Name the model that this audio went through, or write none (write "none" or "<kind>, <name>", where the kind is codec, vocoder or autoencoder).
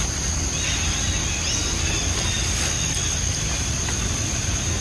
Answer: none